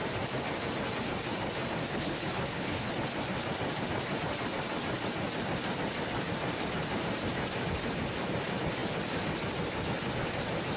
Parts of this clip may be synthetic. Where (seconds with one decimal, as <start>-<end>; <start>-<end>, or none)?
1.8-2.9